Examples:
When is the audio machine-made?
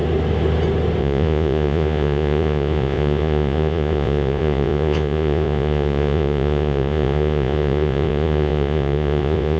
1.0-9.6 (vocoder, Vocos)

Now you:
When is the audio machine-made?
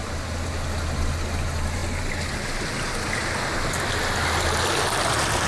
none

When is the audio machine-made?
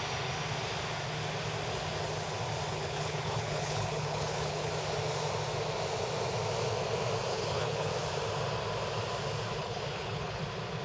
2.7-4.7 (codec, HILCodec); 7.3-7.9; 9.6-10.4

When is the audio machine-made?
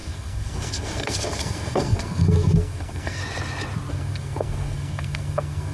0.0-3.2 (codec, SNAC); 3.9-5.7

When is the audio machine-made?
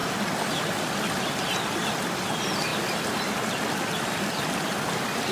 none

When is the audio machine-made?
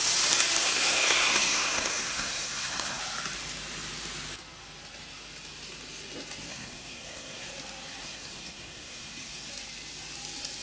0.6-3.0 (codec, SNAC); 6.5-7.5; 8.0-9.5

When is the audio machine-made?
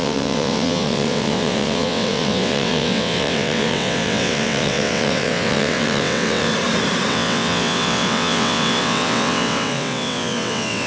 0.0-6.5 (vocoder, WaveNeXt); 7.1-10.9